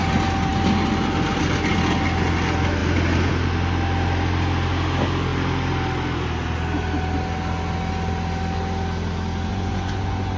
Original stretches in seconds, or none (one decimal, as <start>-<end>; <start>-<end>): 0.0-9.5